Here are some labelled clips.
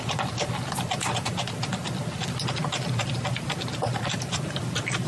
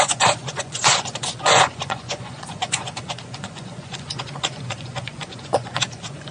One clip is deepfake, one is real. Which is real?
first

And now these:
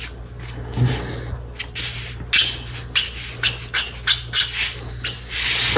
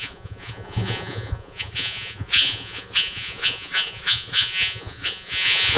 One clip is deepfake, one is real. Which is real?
first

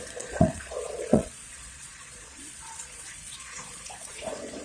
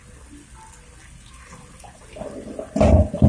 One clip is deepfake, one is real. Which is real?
second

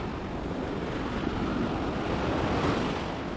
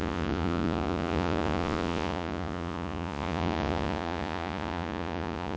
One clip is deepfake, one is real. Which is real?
first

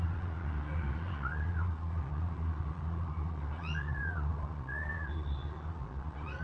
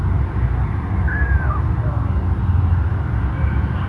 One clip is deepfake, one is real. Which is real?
second